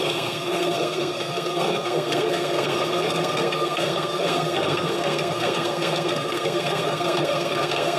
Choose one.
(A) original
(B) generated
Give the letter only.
B